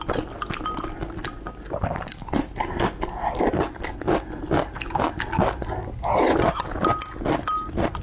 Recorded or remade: recorded